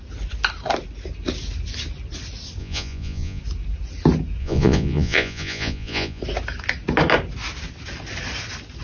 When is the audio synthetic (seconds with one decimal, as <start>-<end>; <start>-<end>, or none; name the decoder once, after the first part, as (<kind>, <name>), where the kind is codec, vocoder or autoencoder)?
2.6-3.4 (vocoder, Vocos); 4.4-6.2